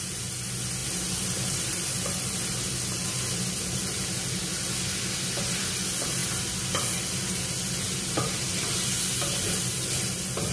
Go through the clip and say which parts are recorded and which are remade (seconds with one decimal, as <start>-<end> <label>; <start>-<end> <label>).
0.0-10.5 recorded